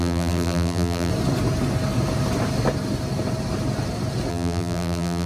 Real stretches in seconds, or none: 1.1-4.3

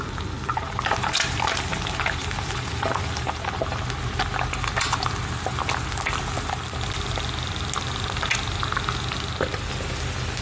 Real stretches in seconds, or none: 0.0-10.4

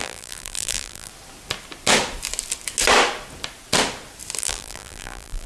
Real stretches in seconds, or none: 1.1-4.4

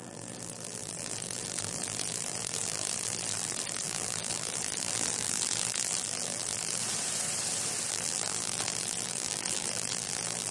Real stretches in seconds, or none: 6.8-7.9

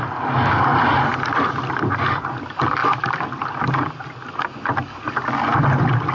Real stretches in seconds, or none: 0.0-6.1

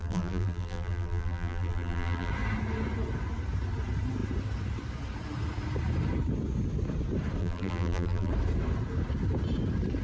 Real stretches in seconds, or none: 2.3-7.4; 8.3-10.0